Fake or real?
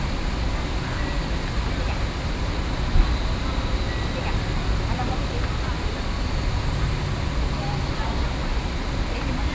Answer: real